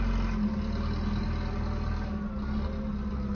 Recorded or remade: recorded